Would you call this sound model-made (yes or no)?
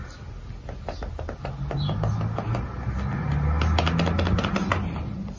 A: no